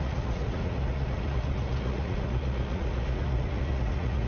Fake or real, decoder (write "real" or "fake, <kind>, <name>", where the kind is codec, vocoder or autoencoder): fake, vocoder, Vocos